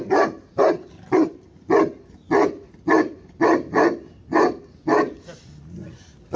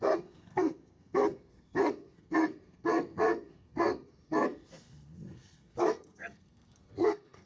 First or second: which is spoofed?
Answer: second